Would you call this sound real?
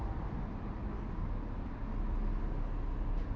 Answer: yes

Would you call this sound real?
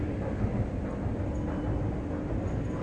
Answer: yes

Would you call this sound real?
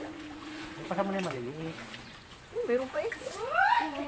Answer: no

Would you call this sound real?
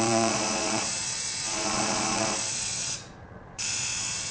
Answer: no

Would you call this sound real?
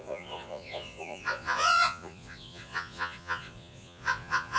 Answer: no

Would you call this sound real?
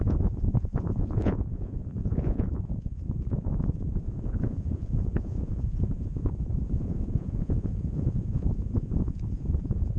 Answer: no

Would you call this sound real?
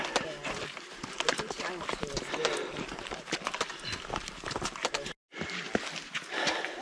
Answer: yes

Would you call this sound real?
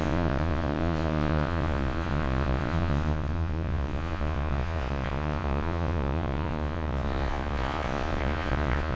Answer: no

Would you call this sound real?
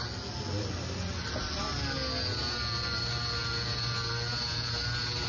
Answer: yes